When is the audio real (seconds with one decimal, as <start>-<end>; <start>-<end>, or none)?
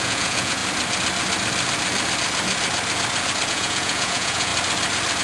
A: 0.6-3.5; 4.5-5.2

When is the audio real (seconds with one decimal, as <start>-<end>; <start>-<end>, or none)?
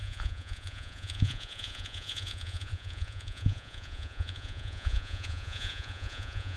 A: none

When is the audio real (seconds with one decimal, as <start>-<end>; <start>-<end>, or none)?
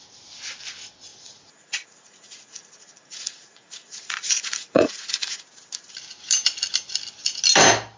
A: 0.0-1.1; 5.4-8.0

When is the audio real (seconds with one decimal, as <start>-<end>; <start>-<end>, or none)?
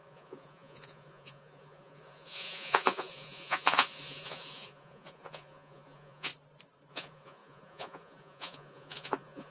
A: 6.3-6.9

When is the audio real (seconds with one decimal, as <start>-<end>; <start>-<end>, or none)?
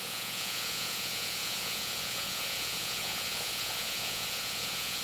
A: none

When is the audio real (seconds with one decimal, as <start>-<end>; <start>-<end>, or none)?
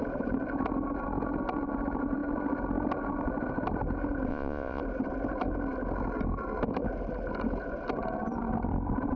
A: 0.0-4.3; 4.8-9.2